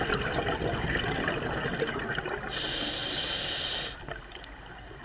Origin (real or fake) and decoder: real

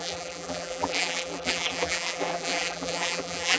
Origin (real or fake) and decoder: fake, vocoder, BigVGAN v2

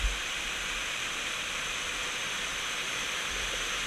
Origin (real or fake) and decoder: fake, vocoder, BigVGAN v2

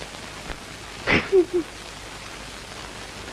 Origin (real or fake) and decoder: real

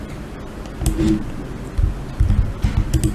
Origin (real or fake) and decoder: real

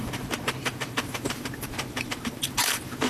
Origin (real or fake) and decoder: fake, vocoder, BigVGAN v2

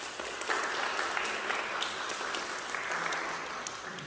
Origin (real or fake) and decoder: real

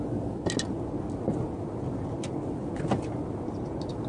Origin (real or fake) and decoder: real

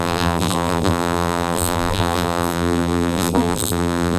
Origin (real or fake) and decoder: fake, vocoder, BigVGAN v2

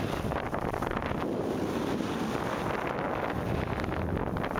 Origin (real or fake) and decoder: real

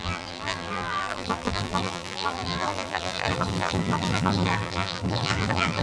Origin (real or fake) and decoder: fake, vocoder, BigVGAN v2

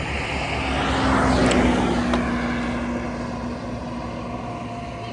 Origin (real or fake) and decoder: real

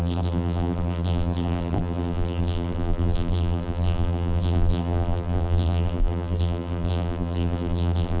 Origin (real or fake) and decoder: fake, vocoder, BigVGAN v2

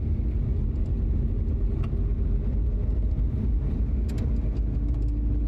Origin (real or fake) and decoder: real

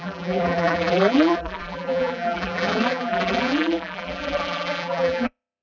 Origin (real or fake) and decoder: fake, vocoder, BigVGAN v2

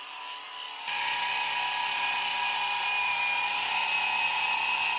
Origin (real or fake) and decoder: fake, vocoder, BigVGAN v2